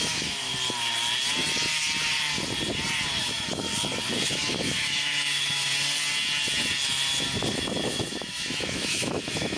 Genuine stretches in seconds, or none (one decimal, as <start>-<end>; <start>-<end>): 0.5-3.2; 3.7-4.3; 5.7-7.5